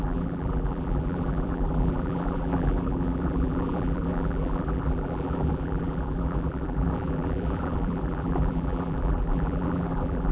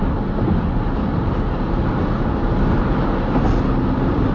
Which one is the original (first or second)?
second